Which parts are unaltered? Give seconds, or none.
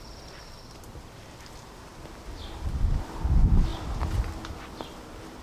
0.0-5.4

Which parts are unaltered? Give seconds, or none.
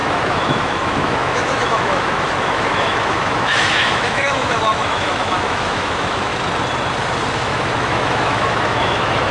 6.3-7.3